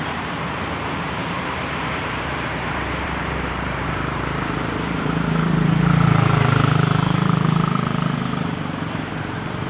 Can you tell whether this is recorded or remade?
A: remade